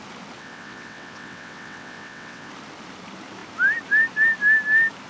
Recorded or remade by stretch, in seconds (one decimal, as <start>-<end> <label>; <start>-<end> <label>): 0.0-0.4 recorded; 0.4-2.5 remade; 2.5-5.1 recorded